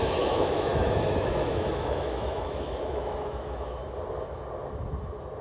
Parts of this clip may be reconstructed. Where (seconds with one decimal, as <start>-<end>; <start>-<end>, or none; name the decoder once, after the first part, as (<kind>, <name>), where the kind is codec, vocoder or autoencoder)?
0.0-3.8 (autoencoder, DAC-VAE)